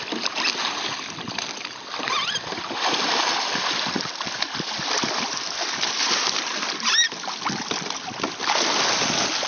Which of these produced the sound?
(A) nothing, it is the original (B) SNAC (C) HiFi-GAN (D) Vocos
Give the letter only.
A